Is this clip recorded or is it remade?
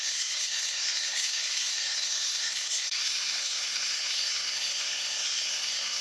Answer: remade